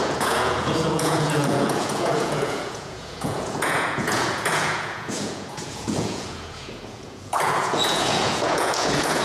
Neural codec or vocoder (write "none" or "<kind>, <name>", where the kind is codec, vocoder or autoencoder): vocoder, Vocos